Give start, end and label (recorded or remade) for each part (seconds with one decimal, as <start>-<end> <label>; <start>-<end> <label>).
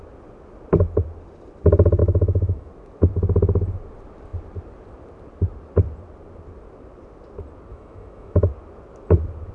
0.0-2.0 recorded; 2.0-2.7 remade; 2.7-7.7 recorded; 7.7-8.5 remade; 8.5-9.5 recorded